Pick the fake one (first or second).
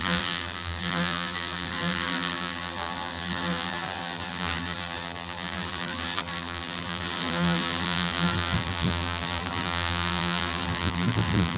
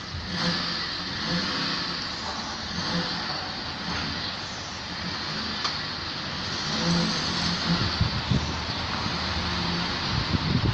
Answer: first